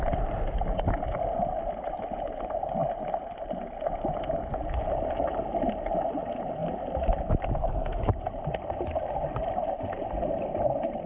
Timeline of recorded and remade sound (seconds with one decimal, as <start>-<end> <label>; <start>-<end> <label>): 0.0-9.6 recorded; 9.6-10.2 remade; 10.2-11.1 recorded